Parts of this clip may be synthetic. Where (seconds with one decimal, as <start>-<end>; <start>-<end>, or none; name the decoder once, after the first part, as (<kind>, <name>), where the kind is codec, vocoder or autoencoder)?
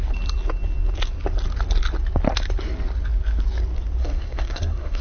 4.0-5.0 (codec, SNAC)